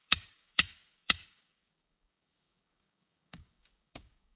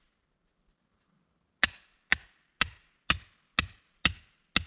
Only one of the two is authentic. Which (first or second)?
second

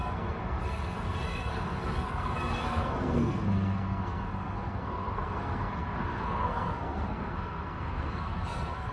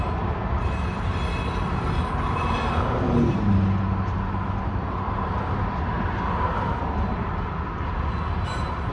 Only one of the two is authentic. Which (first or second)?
second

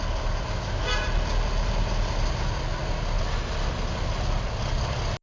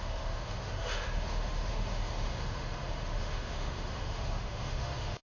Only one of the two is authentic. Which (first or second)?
first